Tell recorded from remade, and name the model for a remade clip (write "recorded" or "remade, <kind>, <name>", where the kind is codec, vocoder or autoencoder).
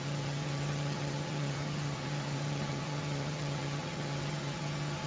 remade, vocoder, HiFi-GAN